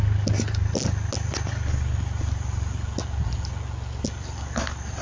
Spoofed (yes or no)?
no